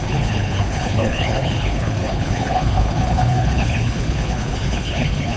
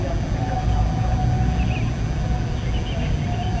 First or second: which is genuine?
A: second